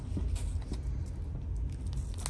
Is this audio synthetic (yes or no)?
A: no